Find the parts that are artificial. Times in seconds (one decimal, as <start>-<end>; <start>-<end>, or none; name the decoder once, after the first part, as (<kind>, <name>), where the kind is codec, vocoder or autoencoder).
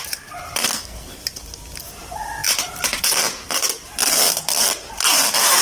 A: 0.6-1.2 (codec, SNAC)